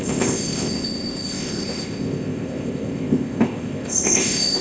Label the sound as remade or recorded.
remade